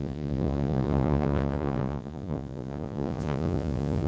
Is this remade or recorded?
remade